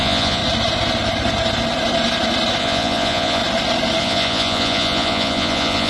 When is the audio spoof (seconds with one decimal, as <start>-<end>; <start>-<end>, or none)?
0.0-0.4; 2.6-3.4; 4.0-5.9